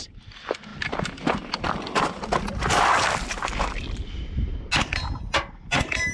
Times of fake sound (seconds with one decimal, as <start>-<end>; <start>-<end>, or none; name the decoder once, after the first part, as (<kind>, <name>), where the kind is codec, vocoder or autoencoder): none